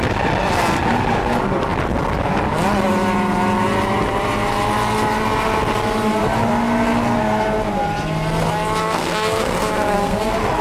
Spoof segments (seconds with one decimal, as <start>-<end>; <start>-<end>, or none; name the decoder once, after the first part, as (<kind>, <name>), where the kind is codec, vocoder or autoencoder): 8.8-10.2 (codec, SNAC)